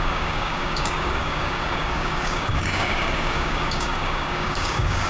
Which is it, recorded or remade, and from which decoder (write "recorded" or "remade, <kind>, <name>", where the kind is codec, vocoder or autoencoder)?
remade, codec, DAC